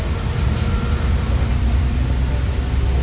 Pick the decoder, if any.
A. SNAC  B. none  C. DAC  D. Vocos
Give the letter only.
B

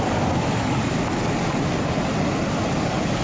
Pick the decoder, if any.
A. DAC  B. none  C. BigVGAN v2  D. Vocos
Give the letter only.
B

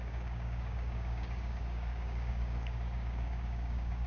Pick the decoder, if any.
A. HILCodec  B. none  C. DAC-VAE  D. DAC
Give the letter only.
D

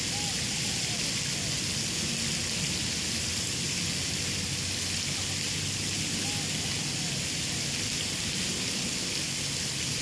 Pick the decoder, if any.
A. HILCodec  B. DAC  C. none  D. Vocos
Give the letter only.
C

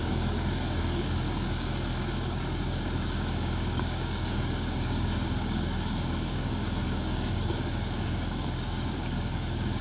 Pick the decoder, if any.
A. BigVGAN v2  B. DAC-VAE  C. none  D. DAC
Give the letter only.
D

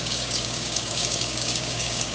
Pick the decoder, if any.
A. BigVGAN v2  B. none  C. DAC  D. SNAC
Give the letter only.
C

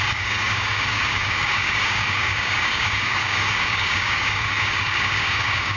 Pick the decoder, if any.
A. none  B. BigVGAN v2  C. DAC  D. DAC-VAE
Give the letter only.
C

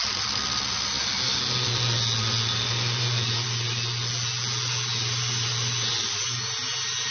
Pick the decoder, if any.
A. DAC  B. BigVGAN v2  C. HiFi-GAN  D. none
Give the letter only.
D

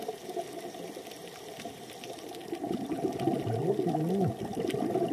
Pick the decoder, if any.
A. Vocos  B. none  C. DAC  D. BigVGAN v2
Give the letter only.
B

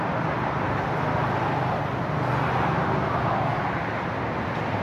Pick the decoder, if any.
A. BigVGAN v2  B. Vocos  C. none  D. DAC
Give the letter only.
C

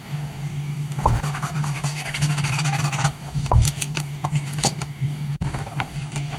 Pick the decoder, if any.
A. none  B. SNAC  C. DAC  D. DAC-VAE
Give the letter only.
C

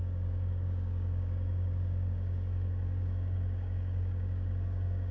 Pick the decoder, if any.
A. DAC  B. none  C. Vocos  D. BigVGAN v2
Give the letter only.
A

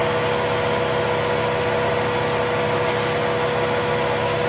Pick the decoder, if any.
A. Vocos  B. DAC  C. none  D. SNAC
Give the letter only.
C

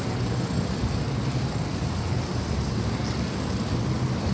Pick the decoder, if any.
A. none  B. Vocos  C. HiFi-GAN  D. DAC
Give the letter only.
A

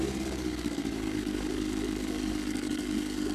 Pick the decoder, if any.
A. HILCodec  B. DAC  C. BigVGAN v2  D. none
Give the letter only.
B